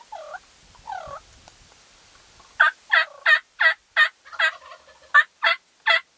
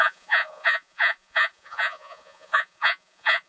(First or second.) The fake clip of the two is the second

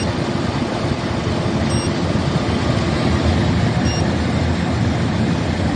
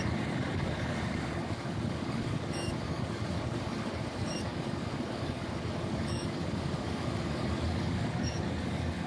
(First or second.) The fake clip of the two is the second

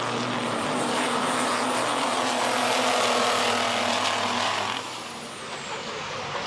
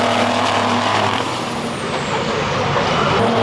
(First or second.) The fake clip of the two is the second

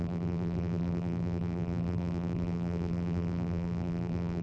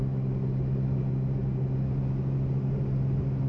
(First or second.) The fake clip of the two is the first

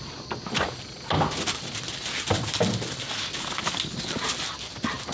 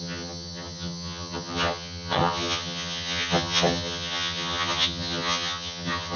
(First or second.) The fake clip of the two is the second